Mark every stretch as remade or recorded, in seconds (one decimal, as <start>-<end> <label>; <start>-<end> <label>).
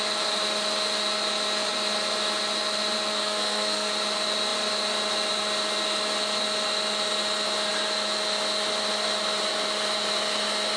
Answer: 0.0-3.1 recorded; 3.1-3.9 remade; 3.9-10.8 recorded